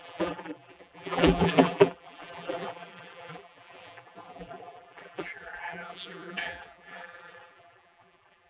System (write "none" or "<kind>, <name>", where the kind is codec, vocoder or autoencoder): vocoder, BigVGAN v2